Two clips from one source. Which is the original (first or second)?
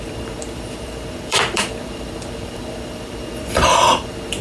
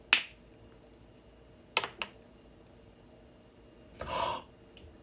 second